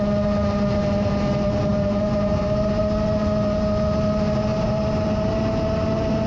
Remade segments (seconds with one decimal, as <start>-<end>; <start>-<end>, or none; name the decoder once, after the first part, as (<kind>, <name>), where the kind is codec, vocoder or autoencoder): 1.7-2.8 (vocoder, BigVGAN v2); 4.5-5.3